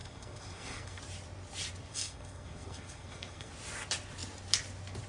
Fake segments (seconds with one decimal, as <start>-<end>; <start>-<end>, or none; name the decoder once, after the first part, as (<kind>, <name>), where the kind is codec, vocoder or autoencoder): 0.0-1.0 (codec, SNAC); 1.9-3.5